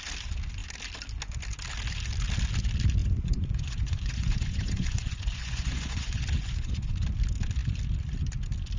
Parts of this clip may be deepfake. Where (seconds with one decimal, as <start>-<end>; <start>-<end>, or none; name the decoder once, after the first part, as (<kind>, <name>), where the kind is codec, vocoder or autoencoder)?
3.0-6.9 (vocoder, Vocos)